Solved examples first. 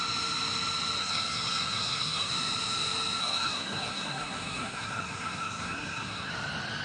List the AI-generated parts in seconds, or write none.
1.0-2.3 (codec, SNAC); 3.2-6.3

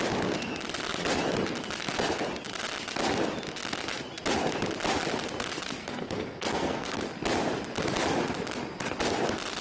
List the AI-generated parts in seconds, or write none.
5.8-7.0 (codec, SNAC)